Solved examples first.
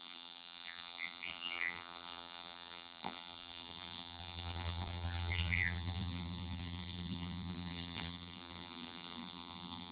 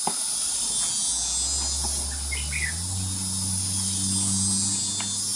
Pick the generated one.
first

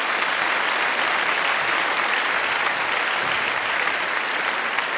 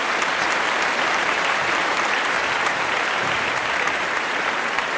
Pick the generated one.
second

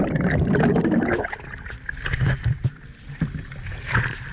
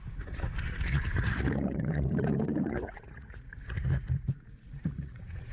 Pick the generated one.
second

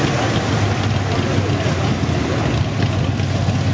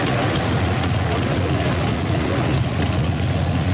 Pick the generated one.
second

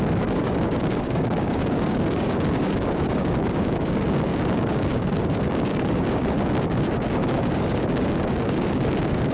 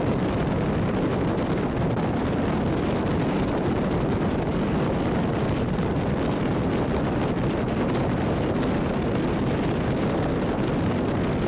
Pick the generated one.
first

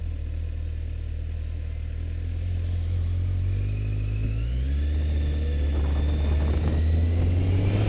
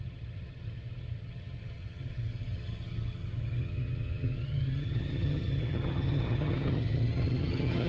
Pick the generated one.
second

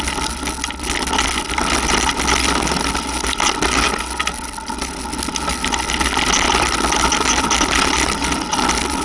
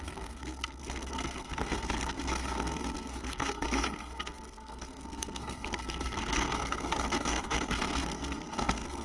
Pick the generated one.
second